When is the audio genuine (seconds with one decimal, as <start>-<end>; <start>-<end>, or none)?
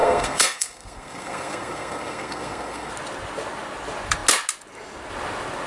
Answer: 2.9-5.7